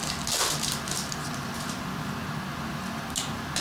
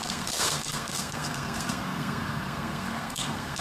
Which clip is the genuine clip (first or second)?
first